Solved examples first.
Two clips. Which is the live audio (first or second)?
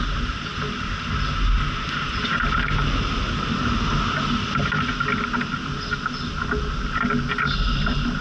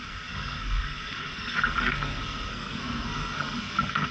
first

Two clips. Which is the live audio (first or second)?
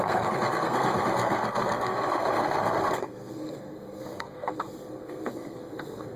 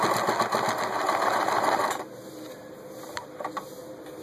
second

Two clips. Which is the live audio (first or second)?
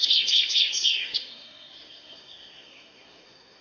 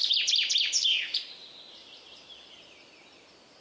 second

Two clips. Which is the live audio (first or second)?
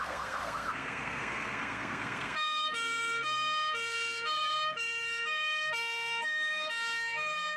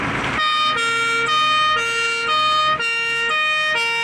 second